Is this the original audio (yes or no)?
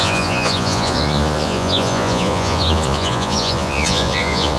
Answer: no